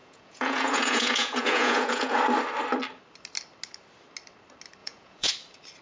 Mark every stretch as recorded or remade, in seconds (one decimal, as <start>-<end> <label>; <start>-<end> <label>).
0.0-2.2 remade; 2.2-4.8 recorded; 4.8-5.3 remade; 5.3-5.8 recorded